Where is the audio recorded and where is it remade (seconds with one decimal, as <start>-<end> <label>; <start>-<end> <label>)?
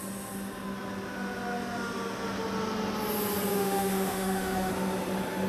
0.0-3.5 recorded; 3.5-4.7 remade; 4.7-5.5 recorded